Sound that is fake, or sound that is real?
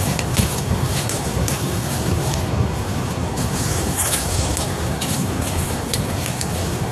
fake